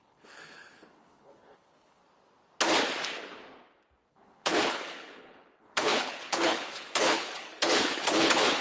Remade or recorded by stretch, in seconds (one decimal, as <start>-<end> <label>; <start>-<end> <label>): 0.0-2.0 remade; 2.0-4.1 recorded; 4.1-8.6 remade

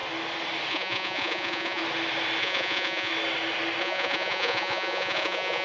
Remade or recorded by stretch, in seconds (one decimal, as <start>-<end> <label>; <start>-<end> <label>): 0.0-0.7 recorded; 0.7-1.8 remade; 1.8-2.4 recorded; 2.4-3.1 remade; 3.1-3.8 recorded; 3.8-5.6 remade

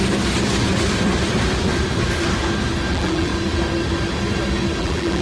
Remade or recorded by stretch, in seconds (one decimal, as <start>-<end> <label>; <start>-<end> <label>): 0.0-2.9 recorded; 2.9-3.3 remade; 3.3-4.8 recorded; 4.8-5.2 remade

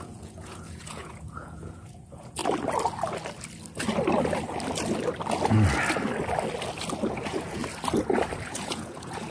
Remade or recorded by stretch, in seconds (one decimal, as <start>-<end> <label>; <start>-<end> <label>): 0.0-2.4 remade; 2.4-7.1 recorded; 7.1-7.6 remade; 7.6-8.4 recorded; 8.4-9.3 remade

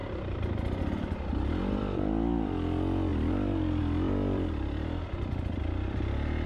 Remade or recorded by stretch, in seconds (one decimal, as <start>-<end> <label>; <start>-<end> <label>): 0.0-3.1 remade; 3.1-3.8 recorded; 3.8-6.5 remade

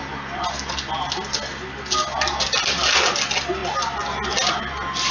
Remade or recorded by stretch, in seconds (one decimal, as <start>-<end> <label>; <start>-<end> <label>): 0.0-5.1 recorded

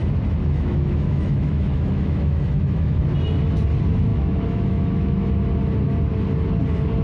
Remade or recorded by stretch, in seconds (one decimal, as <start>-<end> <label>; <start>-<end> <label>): 0.0-0.4 recorded; 0.4-3.0 remade; 3.0-4.1 recorded; 4.1-5.3 remade; 5.3-7.0 recorded